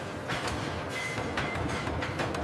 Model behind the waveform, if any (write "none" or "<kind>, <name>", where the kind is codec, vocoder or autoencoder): none